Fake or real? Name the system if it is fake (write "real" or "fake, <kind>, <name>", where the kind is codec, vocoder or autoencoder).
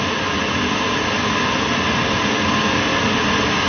real